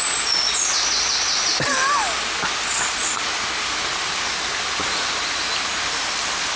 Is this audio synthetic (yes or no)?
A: no